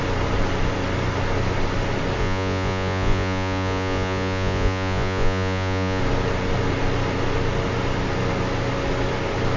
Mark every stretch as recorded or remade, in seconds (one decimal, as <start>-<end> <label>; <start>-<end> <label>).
0.0-2.2 recorded; 2.2-6.0 remade; 6.0-9.6 recorded